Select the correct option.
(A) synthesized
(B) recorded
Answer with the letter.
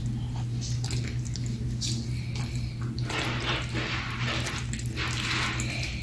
B